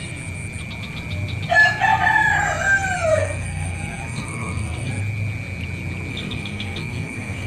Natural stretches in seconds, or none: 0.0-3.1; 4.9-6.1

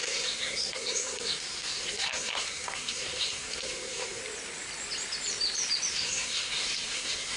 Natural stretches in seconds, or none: 4.2-5.9

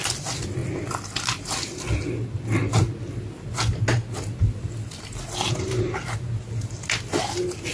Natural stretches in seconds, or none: 0.0-7.7

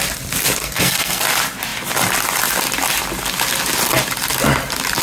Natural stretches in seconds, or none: 0.0-0.6; 1.2-5.0